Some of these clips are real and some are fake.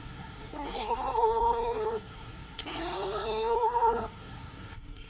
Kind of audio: fake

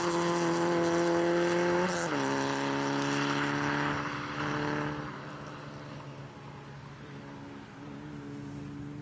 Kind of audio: real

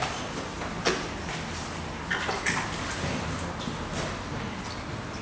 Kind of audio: real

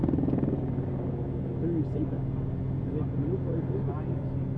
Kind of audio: real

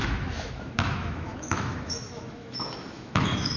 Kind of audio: fake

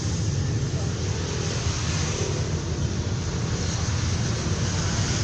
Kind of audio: real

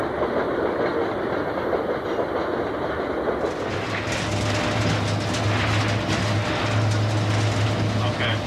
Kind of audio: real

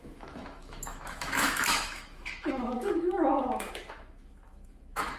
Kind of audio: fake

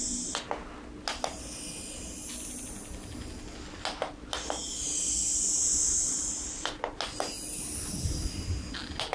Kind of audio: real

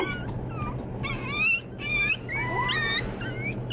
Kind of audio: real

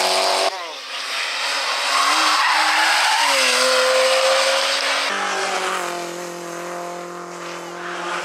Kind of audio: real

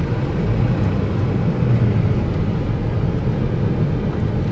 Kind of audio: real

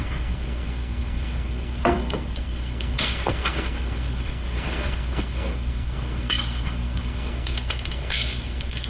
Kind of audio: fake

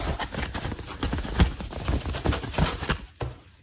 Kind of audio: real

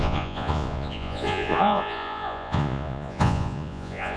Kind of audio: fake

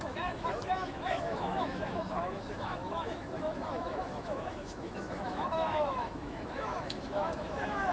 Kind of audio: fake